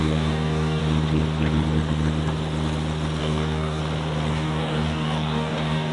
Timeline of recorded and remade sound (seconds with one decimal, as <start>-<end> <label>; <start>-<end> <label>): 0.0-0.8 remade; 0.8-3.2 recorded; 3.2-3.8 remade; 3.8-4.3 recorded; 4.3-5.9 remade